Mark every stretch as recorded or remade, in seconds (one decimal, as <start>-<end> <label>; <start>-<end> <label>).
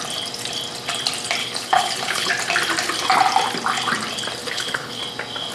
0.0-1.4 recorded; 1.4-2.3 remade; 2.3-4.4 recorded; 4.4-5.0 remade; 5.0-5.5 recorded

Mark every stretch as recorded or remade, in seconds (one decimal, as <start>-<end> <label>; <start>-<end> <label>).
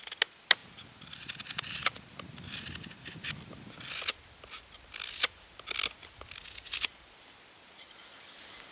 0.0-8.7 recorded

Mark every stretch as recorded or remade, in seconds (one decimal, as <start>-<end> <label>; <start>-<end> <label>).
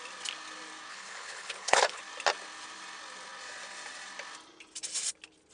0.0-0.9 recorded; 0.9-2.0 remade; 2.0-5.5 recorded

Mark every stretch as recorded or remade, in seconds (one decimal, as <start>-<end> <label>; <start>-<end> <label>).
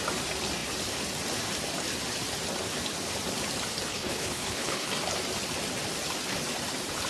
0.0-3.9 recorded; 3.9-4.9 remade; 4.9-7.1 recorded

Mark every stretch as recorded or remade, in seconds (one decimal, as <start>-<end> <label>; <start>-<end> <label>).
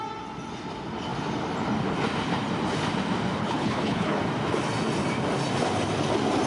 0.0-3.4 recorded; 3.4-4.2 remade; 4.2-6.5 recorded